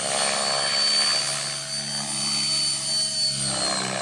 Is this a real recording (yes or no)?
yes